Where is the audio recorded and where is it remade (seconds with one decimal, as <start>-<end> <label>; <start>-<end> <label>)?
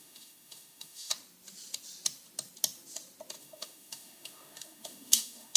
0.0-1.1 remade; 1.1-3.4 recorded; 3.4-5.6 remade